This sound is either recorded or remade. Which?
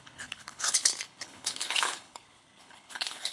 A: remade